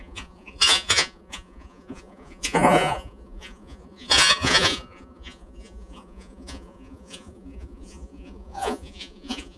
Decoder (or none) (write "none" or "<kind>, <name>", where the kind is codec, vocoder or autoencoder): vocoder, Vocos